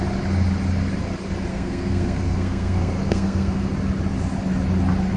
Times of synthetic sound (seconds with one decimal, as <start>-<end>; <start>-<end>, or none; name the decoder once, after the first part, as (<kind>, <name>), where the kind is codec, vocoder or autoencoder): 1.5-3.7 (codec, SNAC)